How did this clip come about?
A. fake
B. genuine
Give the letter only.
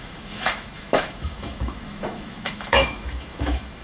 A